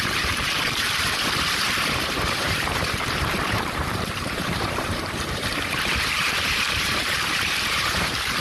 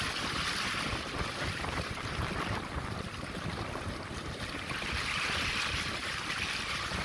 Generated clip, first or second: first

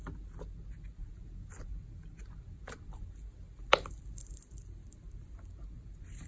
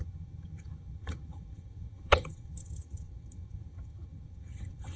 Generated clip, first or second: second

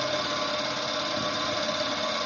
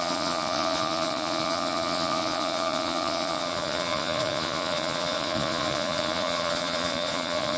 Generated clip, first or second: second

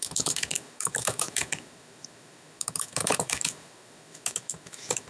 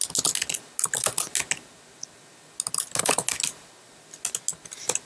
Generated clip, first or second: first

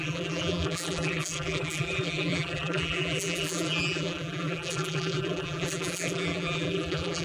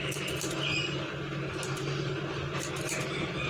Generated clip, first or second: first